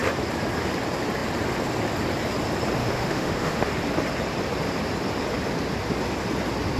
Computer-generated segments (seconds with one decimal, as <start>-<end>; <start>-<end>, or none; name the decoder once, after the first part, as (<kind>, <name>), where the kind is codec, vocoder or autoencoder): 2.8-3.7 (autoencoder, DAC-VAE)